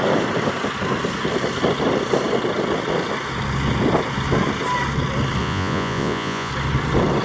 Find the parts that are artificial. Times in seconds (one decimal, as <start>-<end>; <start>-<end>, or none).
5.4-6.5